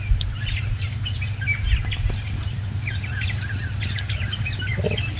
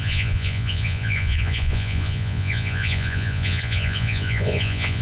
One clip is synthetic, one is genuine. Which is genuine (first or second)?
first